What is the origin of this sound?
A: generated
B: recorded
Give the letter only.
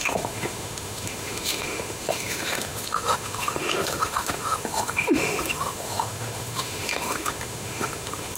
A